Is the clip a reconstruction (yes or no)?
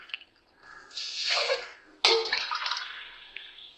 yes